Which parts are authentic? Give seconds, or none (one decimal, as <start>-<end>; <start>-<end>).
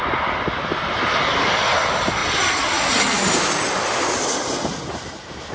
0.0-5.5